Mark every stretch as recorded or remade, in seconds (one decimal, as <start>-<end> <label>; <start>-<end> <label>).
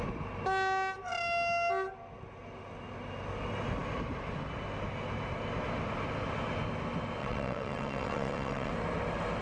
0.0-7.2 recorded; 7.2-8.7 remade; 8.7-9.4 recorded